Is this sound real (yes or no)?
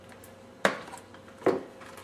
yes